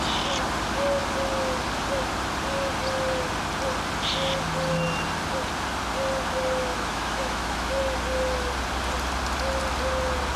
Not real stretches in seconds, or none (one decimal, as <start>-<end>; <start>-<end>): 6.7-7.8